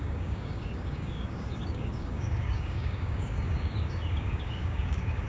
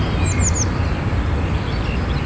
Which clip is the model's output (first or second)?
first